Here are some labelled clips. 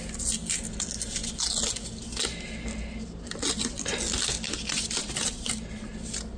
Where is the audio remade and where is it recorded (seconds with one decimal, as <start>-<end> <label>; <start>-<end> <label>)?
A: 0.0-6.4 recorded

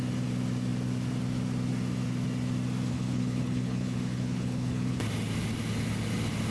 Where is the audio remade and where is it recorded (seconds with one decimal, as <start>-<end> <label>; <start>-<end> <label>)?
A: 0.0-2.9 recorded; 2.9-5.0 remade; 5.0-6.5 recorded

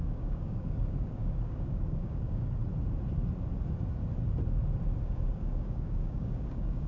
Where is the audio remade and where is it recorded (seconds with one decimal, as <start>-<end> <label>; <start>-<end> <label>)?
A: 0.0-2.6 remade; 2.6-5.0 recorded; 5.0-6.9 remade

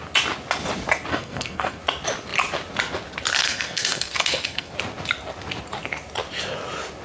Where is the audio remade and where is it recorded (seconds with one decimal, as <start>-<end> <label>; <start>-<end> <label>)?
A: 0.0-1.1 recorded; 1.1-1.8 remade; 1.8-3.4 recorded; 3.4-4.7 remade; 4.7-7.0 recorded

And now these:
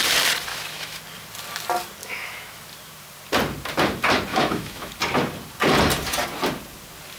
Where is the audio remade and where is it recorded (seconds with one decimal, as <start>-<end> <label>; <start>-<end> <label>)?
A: 0.0-0.5 recorded; 0.5-1.0 remade; 1.0-2.0 recorded; 2.0-2.6 remade; 2.6-4.3 recorded; 4.3-4.9 remade; 4.9-7.2 recorded

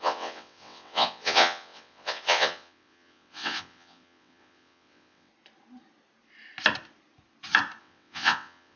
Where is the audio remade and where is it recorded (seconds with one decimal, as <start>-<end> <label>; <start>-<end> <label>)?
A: 0.0-5.3 remade; 5.3-7.8 recorded; 7.8-8.8 remade

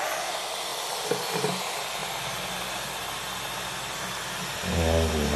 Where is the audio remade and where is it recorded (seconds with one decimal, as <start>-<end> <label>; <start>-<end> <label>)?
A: 0.0-5.4 recorded